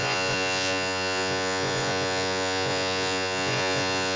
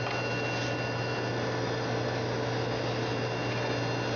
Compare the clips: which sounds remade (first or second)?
first